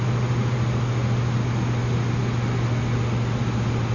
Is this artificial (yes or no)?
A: no